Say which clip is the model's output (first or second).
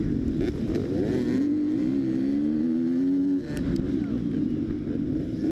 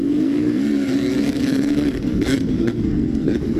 second